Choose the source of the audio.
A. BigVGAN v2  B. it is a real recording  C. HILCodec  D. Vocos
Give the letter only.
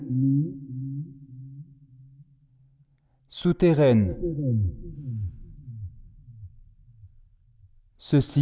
B